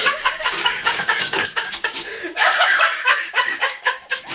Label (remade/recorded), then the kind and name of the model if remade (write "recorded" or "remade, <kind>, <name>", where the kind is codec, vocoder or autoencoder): remade, codec, DAC